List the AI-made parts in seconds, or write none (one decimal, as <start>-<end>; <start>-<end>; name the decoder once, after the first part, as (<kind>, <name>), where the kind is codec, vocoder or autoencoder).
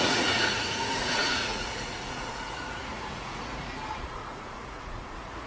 0.0-5.5 (vocoder, Vocos)